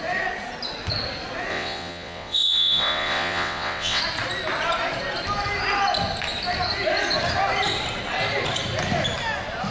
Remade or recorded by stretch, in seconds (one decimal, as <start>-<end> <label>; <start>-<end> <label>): 0.0-1.5 recorded; 1.5-4.0 remade; 4.0-9.7 recorded